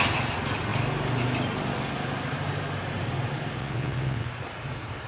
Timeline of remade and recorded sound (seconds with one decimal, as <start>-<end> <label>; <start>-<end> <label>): 0.0-3.6 recorded; 3.6-4.3 remade; 4.3-5.1 recorded